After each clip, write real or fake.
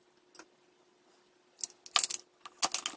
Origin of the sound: real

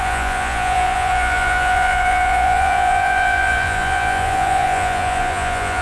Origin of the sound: fake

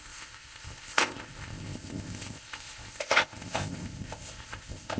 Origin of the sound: fake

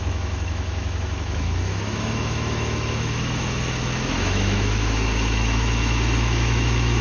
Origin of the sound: fake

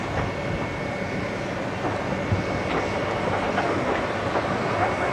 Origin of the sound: real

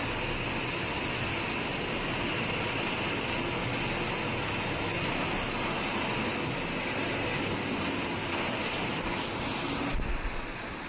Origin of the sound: real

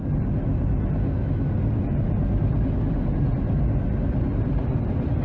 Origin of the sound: real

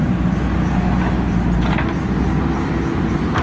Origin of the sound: real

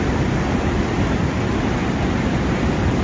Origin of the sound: fake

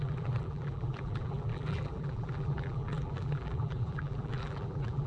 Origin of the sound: fake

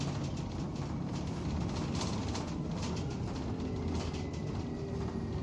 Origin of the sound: real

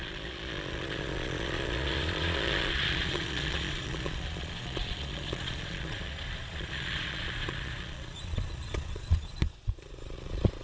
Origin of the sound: fake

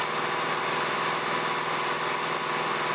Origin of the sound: real